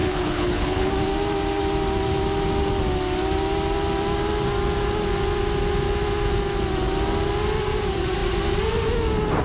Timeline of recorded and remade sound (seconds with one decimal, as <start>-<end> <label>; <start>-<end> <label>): 0.0-0.9 remade; 0.9-9.4 recorded

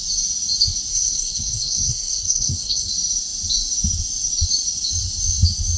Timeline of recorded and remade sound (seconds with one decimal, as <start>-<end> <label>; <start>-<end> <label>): 0.0-0.9 recorded; 0.9-2.9 remade; 2.9-5.8 recorded

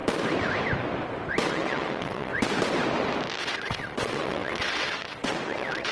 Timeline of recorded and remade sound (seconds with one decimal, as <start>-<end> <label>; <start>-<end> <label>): 0.0-1.5 recorded; 1.5-2.3 remade; 2.3-3.4 recorded; 3.4-5.9 remade

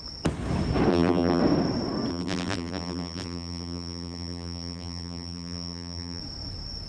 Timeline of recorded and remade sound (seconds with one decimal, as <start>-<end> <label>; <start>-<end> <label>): 0.0-0.9 recorded; 0.9-1.4 remade; 1.4-2.1 recorded; 2.1-6.2 remade; 6.2-6.9 recorded

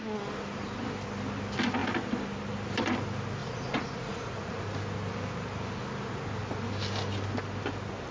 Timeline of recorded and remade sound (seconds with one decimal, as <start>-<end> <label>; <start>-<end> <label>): 0.0-3.4 recorded; 3.4-4.6 remade; 4.6-8.1 recorded

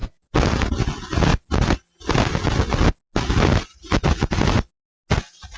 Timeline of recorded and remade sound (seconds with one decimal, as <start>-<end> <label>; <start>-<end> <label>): 0.0-5.6 recorded

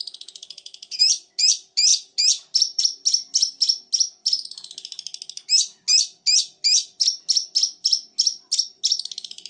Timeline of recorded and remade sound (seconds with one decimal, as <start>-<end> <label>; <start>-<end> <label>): 0.0-9.5 recorded

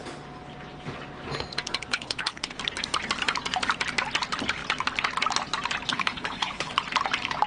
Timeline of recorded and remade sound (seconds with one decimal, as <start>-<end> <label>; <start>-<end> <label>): 0.0-1.9 recorded; 1.9-2.6 remade; 2.6-5.9 recorded; 5.9-6.7 remade; 6.7-7.5 recorded